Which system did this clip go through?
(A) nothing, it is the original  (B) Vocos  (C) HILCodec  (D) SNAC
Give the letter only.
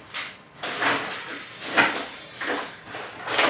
A